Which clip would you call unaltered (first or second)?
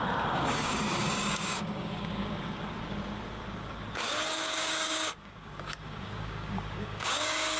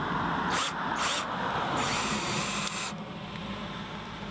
second